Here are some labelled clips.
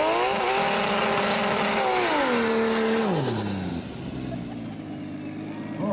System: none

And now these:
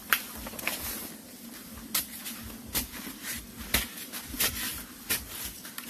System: none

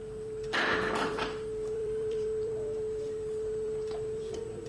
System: vocoder, BigVGAN v2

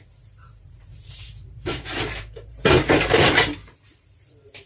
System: vocoder, BigVGAN v2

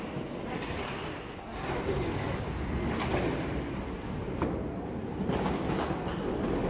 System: none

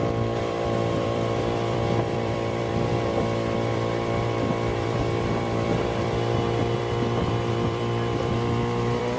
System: vocoder, BigVGAN v2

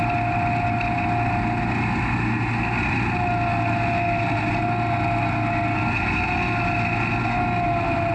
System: none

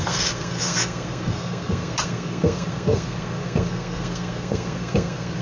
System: codec, SNAC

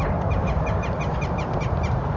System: none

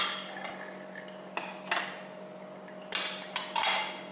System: none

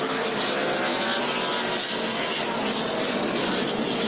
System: none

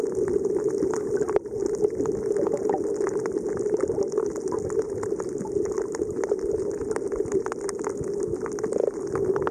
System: none